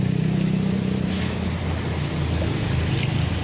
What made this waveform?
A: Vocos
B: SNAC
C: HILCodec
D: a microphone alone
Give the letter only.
D